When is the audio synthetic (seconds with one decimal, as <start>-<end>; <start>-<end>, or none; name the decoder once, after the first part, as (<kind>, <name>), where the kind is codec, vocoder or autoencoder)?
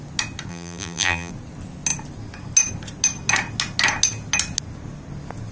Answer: 0.5-1.3 (vocoder, BigVGAN v2)